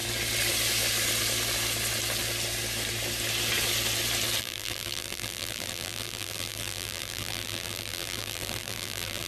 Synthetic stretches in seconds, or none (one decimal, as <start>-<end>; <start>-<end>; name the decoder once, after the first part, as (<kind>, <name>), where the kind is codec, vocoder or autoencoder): 4.4-9.3 (vocoder, BigVGAN v2)